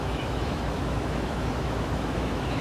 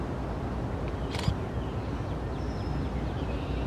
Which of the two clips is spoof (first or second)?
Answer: first